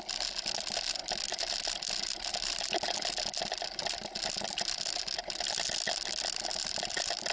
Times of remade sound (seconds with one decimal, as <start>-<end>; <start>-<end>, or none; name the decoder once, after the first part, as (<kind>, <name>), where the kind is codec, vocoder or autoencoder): none